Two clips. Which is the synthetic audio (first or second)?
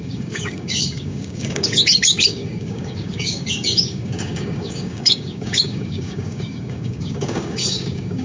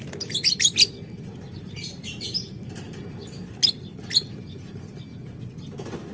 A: first